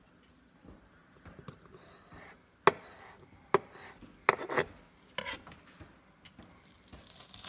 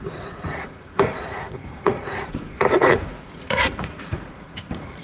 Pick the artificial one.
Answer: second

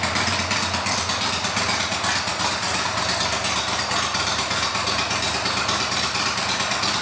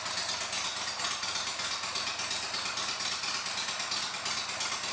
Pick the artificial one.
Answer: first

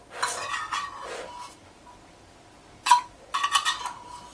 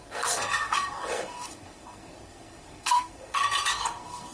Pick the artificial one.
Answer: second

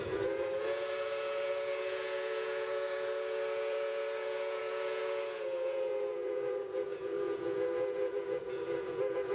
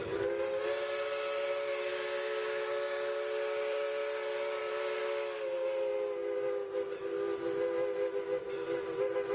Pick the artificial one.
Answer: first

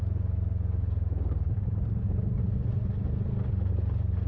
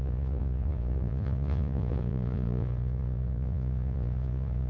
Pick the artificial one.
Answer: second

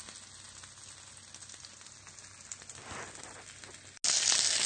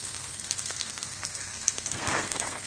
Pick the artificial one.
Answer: second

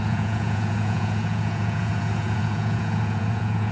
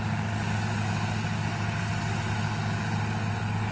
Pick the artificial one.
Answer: first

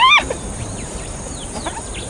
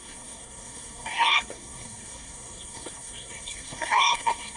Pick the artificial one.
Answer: second